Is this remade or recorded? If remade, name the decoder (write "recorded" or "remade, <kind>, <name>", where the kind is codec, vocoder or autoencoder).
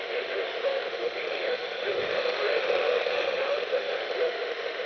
remade, autoencoder, DAC-VAE